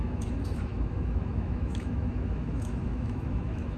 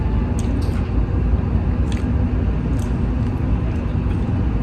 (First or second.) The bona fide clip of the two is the second